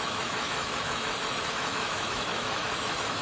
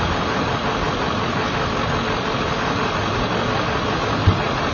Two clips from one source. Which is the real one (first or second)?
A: second